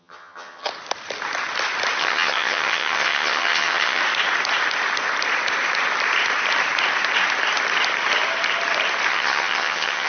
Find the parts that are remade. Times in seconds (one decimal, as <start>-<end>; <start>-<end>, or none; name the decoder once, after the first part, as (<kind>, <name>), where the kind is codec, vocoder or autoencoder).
0.0-0.7 (vocoder, HiFi-GAN); 2.0-4.0; 9.1-10.1